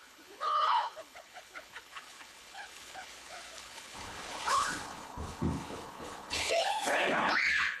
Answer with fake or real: fake